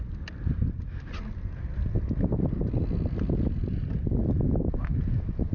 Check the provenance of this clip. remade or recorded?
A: recorded